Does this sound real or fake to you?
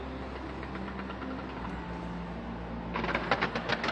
real